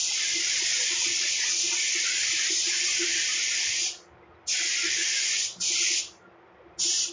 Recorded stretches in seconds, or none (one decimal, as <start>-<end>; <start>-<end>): 0.0-0.7; 1.6-7.1